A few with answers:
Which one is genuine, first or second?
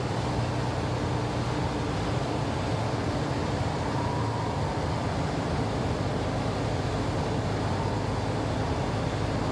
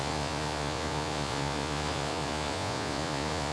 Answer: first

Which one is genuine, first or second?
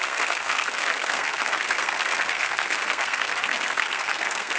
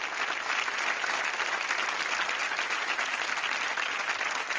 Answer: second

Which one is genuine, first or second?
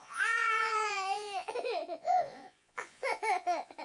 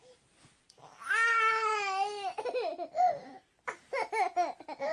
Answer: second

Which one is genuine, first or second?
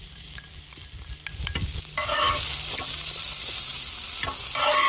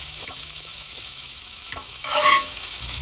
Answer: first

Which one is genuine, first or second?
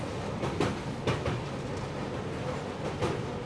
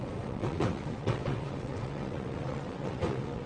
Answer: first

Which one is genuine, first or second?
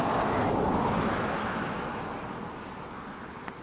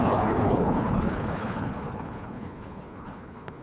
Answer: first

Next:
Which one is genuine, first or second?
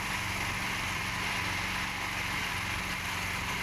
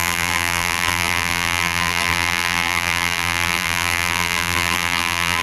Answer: first